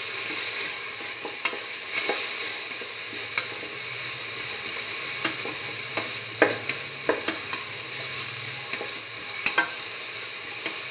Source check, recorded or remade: recorded